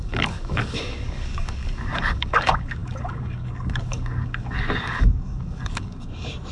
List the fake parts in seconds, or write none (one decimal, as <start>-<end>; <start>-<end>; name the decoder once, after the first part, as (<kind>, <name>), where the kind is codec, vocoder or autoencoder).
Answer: 0.0-6.5 (codec, DAC)